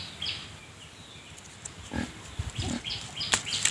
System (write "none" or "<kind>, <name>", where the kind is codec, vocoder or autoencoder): none